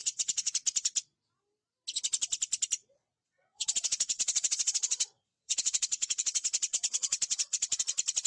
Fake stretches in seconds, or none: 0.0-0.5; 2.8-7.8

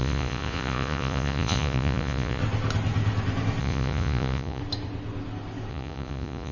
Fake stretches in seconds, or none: 0.0-2.4; 3.6-4.6; 5.7-6.5

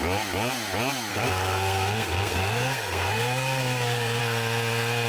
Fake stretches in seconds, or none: 1.1-4.2

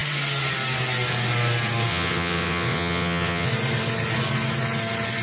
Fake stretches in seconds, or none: 1.9-3.5